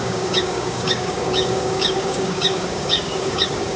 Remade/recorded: remade